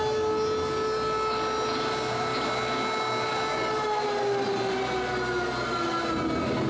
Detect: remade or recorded recorded